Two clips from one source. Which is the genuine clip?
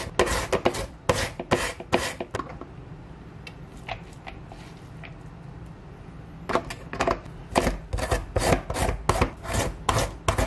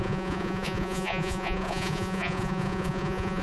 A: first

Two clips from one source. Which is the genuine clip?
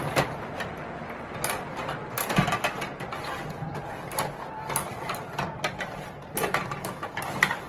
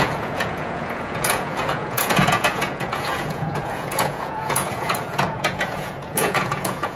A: first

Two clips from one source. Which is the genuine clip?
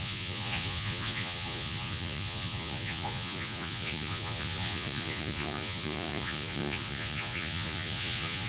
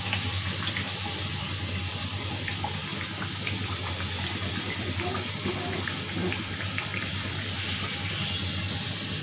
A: second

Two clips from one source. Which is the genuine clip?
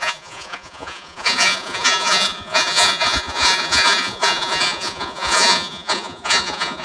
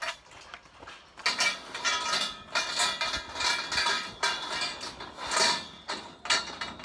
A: second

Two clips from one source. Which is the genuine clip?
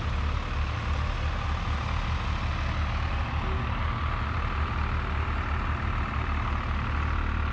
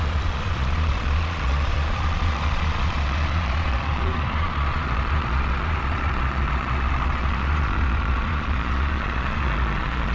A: first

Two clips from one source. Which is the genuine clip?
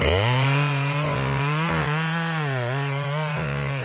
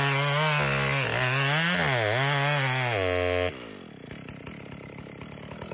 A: second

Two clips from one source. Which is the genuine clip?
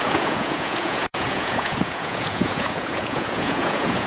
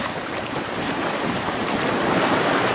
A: second